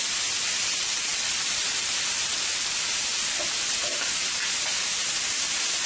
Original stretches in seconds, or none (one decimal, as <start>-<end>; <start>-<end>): 0.0-1.1; 2.6-3.1; 3.8-5.9

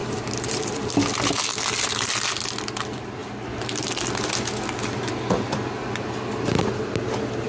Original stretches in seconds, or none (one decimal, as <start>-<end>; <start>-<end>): 0.9-1.5; 2.1-7.5

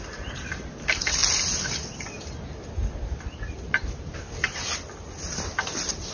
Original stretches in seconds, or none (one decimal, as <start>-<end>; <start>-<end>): 0.0-6.1

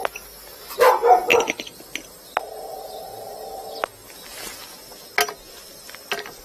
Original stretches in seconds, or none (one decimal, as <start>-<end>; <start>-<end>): 0.0-6.4

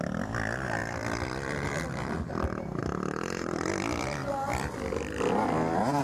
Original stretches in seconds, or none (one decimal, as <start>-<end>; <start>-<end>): 0.0-2.8; 3.7-6.0

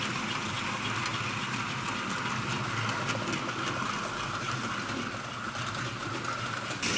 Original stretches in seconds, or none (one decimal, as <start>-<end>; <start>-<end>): 0.0-7.0

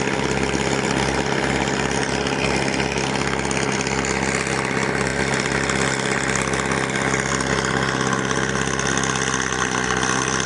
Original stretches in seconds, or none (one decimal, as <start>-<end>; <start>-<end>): 0.0-10.5